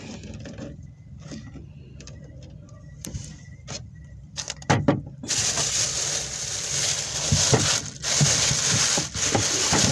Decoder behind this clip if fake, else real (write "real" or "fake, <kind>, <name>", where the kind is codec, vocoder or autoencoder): fake, vocoder, BigVGAN v2